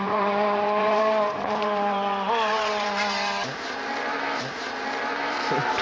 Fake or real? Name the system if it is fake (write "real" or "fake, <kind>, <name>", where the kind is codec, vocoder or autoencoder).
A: fake, vocoder, BigVGAN v2